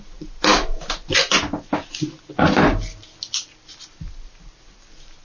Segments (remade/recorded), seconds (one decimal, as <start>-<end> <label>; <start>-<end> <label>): 0.0-5.2 recorded